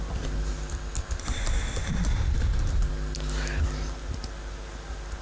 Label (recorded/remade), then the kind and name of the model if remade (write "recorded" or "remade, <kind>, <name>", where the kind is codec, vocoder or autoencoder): recorded